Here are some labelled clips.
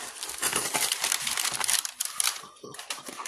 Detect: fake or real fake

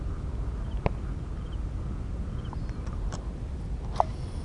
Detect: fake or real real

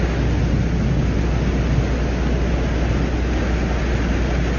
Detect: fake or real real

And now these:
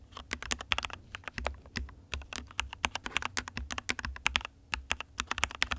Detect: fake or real real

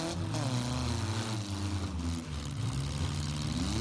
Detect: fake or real real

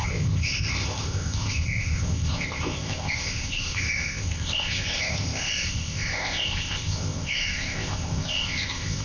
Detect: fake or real fake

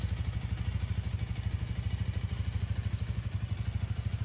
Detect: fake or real real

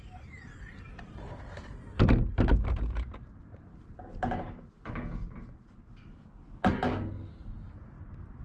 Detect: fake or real real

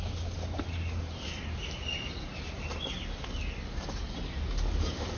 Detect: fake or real real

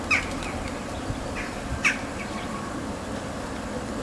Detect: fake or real real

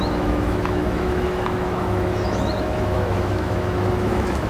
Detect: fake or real fake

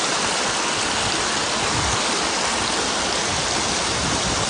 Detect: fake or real real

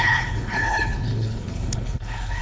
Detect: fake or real fake